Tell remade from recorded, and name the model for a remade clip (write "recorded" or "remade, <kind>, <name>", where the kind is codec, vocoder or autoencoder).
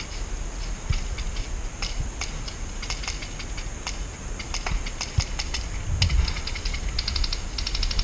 recorded